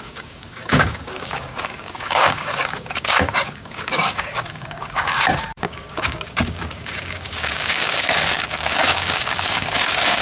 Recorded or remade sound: remade